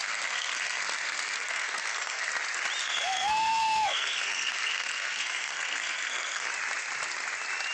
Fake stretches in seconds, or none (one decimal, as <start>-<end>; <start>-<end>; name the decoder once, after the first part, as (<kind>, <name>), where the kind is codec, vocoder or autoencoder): 0.0-2.3 (codec, SNAC); 2.8-6.5